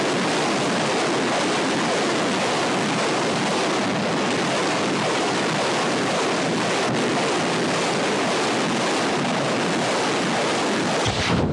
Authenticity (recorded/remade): recorded